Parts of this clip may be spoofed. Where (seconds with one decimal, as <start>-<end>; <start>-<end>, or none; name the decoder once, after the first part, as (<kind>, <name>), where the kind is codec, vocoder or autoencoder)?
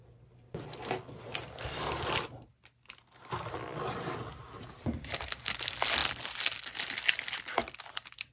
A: none